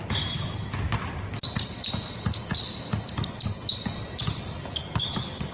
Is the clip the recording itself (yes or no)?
yes